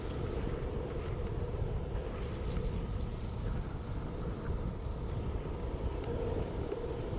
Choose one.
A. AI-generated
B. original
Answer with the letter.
A